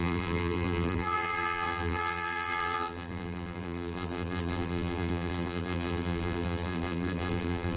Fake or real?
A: fake